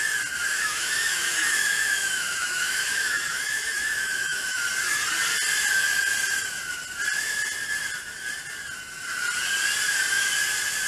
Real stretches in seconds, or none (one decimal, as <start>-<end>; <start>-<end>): 0.0-0.4; 4.6-10.9